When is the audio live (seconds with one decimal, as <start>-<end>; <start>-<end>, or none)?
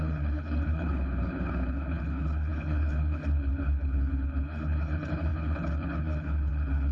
none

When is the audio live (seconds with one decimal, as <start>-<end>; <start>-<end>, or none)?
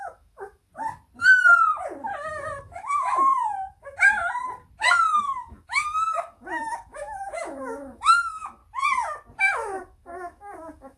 0.7-2.6; 4.2-5.2; 8.6-9.4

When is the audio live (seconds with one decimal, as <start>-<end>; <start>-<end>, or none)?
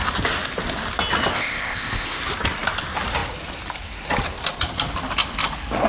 0.0-1.3; 2.2-5.9